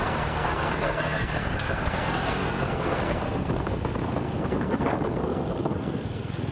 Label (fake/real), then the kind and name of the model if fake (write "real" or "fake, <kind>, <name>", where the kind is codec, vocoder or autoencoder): fake, codec, SNAC